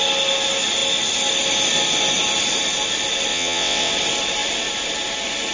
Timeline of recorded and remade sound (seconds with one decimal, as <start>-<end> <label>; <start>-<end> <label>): 0.0-3.3 recorded; 3.3-3.9 remade; 3.9-5.5 recorded